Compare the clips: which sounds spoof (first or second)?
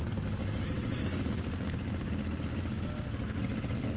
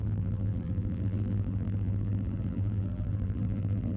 second